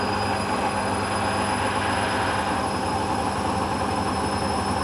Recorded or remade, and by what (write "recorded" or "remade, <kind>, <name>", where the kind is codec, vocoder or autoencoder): recorded